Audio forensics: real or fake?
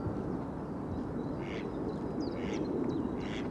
real